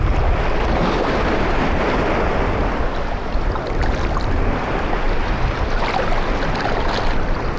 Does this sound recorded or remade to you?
recorded